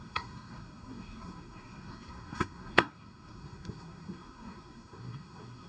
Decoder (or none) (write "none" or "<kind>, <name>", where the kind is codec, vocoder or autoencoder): codec, SNAC